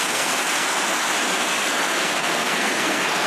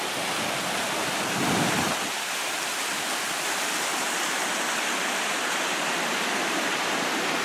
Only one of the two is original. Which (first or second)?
second